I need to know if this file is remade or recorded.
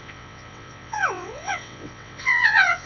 remade